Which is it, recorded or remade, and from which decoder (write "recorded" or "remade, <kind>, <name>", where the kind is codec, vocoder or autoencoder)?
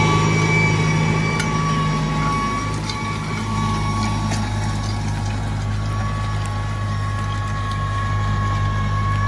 recorded